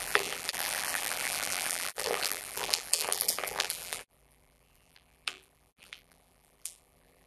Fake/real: fake